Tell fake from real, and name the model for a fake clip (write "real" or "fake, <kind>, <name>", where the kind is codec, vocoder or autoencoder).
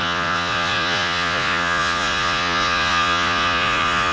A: fake, vocoder, Vocos